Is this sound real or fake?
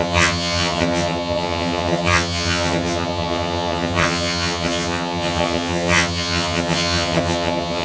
fake